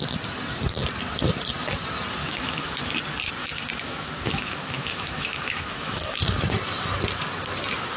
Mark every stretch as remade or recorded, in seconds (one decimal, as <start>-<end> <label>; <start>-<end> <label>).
0.0-2.2 recorded; 2.2-2.8 remade; 2.8-3.4 recorded; 3.4-6.2 remade; 6.2-8.0 recorded